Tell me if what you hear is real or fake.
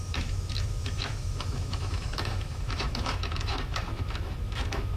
fake